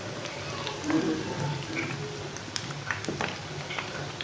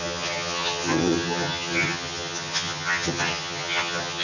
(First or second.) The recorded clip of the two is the first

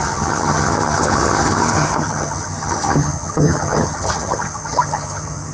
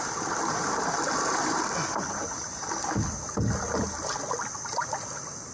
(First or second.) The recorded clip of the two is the second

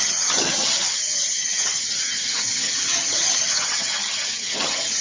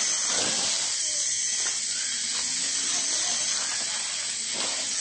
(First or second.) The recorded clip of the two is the second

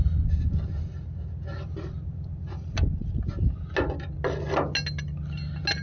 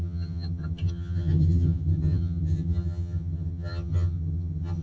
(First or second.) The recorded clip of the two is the first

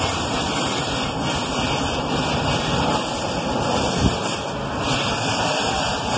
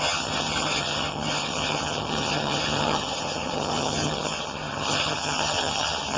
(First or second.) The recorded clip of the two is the first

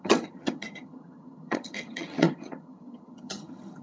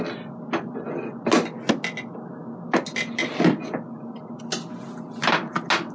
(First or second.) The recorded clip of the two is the second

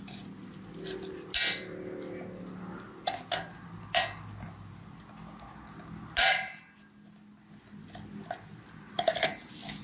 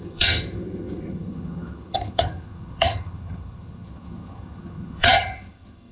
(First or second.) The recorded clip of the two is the first